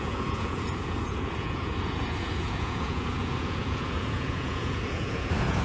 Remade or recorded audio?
remade